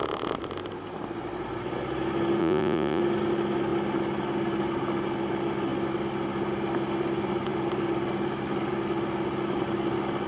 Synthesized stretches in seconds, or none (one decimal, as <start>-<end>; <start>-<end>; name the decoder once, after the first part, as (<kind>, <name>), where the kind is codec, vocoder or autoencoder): 2.4-3.0 (vocoder, Vocos)